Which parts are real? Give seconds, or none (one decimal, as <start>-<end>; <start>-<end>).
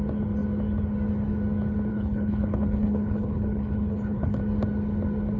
0.0-1.9; 4.4-5.4